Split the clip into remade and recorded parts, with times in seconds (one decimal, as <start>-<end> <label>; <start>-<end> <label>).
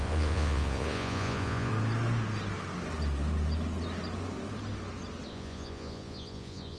0.0-1.7 remade; 1.7-5.3 recorded; 5.3-6.8 remade